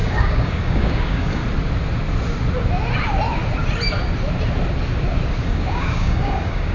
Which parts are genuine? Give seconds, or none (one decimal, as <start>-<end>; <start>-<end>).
1.4-5.4